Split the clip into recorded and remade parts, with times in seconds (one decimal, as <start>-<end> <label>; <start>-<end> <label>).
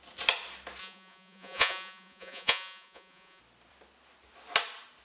0.0-0.8 recorded; 0.8-3.4 remade; 3.4-5.0 recorded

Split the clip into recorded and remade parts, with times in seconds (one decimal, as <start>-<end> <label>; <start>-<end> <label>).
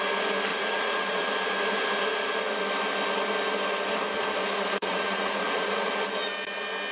0.0-0.5 recorded; 0.5-1.3 remade; 1.3-4.5 recorded; 4.5-5.9 remade; 5.9-6.9 recorded